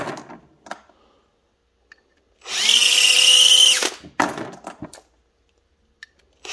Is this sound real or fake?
real